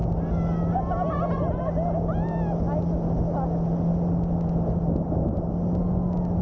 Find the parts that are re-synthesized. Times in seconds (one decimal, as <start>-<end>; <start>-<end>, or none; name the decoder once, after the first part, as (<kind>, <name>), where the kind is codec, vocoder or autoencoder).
none